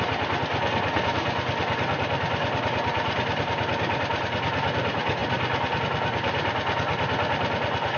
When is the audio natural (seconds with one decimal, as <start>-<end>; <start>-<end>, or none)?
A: 0.0-8.0